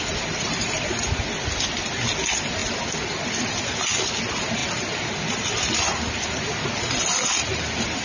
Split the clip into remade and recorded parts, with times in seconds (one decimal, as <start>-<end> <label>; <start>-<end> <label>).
0.0-8.0 recorded